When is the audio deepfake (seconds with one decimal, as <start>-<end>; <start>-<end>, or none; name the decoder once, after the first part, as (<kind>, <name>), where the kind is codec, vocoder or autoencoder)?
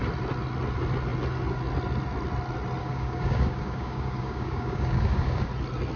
2.8-5.5 (codec, DAC)